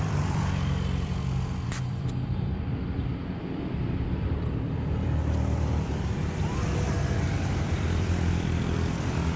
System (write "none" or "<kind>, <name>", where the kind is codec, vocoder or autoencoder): vocoder, BigVGAN v2